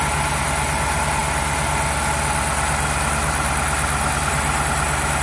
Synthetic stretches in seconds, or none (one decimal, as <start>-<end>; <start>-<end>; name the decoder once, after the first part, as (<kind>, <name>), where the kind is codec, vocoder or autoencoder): none

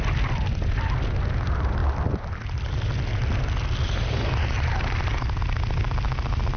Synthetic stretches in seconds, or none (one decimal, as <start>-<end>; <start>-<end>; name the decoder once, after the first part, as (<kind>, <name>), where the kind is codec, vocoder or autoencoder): none

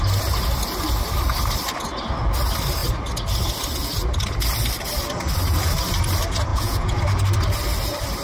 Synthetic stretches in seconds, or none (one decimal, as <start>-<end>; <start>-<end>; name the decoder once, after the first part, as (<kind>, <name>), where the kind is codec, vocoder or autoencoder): 6.5-7.0 (vocoder, Vocos)

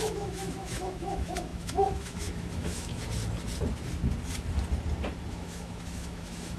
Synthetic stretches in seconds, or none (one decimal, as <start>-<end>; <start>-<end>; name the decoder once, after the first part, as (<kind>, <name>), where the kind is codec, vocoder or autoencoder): 0.0-3.0 (autoencoder, DAC-VAE); 5.3-6.6

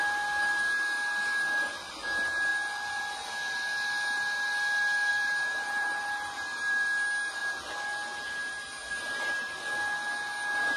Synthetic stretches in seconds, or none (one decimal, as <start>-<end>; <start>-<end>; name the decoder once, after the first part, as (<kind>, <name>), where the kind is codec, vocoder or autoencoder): 5.1-6.6 (vocoder, BigVGAN v2)

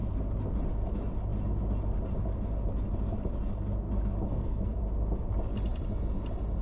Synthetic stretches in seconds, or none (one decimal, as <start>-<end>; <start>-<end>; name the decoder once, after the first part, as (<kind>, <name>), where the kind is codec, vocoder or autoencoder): 4.3-4.8 (codec, SNAC)

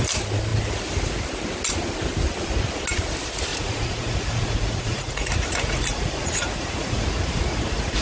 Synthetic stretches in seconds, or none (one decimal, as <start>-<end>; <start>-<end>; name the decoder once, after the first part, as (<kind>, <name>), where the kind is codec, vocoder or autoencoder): 3.5-8.0 (vocoder, Vocos)

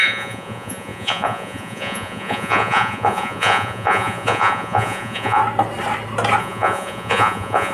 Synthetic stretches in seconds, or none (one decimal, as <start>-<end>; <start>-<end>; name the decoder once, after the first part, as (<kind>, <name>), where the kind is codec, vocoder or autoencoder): 0.0-5.4 (vocoder, Vocos); 6.4-7.7